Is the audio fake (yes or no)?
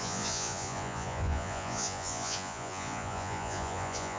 yes